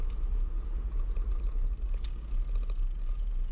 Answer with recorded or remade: recorded